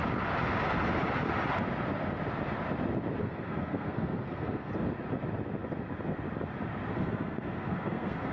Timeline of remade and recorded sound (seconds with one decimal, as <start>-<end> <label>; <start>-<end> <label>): 0.0-3.2 recorded; 3.2-4.7 remade; 4.7-6.9 recorded; 6.9-8.3 remade